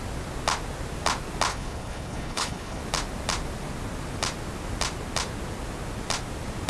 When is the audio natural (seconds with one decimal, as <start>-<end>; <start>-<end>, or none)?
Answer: 0.0-1.5; 2.8-6.7